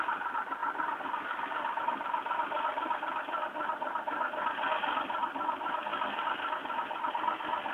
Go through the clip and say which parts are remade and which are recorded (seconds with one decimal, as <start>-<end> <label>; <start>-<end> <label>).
0.0-7.7 recorded